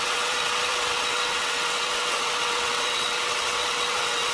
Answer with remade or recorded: remade